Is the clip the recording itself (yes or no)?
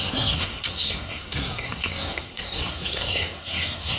no